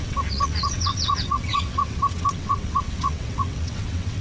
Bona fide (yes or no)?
no